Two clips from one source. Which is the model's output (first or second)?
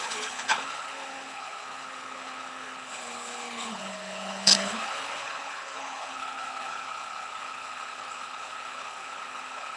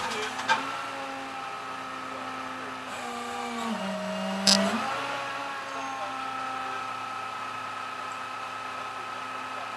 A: first